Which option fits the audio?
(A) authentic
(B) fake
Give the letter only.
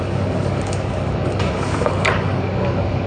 B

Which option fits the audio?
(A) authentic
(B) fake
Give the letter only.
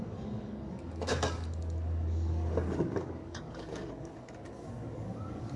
B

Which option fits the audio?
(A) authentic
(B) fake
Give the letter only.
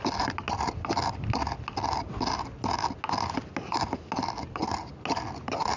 A